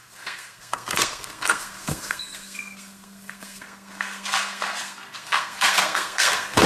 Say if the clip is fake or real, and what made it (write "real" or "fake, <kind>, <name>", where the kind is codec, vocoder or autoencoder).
fake, codec, SNAC